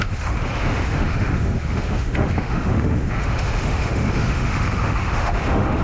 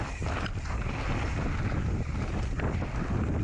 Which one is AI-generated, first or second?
first